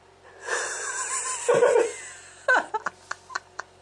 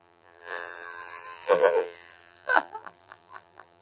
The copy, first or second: second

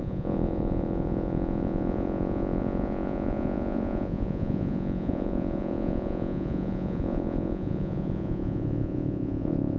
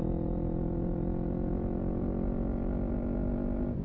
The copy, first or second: first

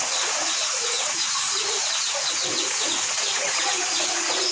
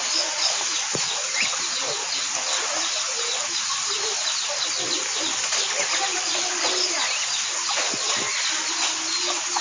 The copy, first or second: first